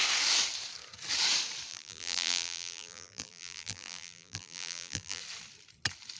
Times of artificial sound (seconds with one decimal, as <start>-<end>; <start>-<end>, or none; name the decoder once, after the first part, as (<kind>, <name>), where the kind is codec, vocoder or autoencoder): 1.7-5.2 (vocoder, BigVGAN v2)